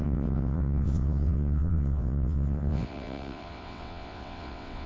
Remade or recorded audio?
remade